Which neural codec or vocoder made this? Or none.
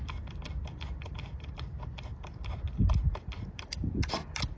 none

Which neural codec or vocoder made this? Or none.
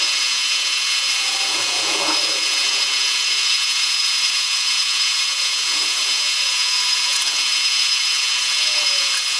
vocoder, Vocos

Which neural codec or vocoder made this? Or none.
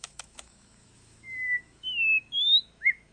autoencoder, DAC-VAE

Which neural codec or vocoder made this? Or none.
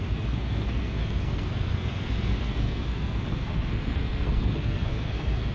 codec, SNAC